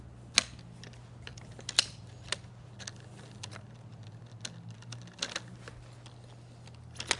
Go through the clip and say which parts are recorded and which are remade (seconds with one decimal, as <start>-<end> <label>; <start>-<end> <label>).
0.0-7.2 recorded